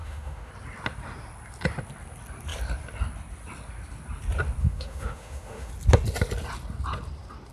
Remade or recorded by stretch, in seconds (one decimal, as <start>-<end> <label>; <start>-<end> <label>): 0.0-0.5 remade; 0.5-4.6 recorded; 4.6-5.7 remade; 5.7-7.5 recorded